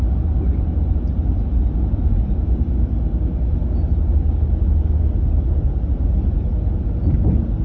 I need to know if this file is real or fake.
real